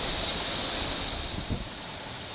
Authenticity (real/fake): real